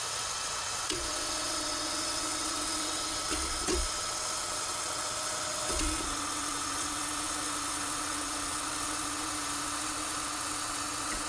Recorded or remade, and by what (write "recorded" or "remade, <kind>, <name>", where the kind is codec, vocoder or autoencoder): remade, vocoder, WaveNeXt